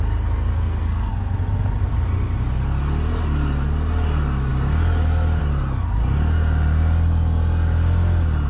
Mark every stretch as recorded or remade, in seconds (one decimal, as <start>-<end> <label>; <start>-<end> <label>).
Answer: 0.0-0.5 recorded; 0.5-1.1 remade; 1.1-8.5 recorded